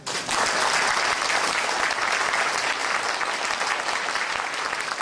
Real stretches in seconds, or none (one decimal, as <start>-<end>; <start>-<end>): 0.0-5.0